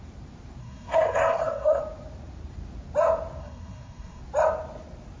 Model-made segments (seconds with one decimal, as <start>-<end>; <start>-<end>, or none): 0.6-1.8; 3.4-4.2